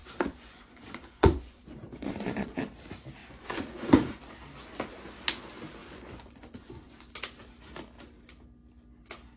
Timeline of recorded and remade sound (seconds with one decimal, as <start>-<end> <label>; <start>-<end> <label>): 0.0-2.6 remade; 2.6-3.2 recorded; 3.2-4.2 remade; 4.2-5.8 recorded; 5.8-7.1 remade; 7.1-9.4 recorded